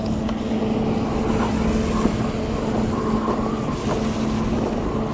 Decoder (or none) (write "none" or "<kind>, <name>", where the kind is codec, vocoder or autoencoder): none